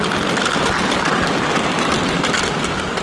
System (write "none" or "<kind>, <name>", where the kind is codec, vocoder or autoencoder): none